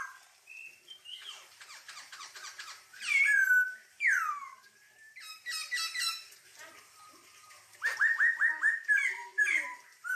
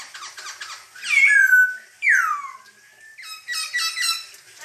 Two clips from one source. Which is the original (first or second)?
second